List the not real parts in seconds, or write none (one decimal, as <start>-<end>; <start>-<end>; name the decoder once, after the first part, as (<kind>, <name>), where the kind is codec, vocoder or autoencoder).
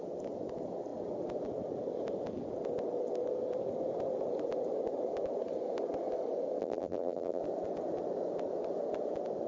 6.6-7.4 (vocoder, BigVGAN v2)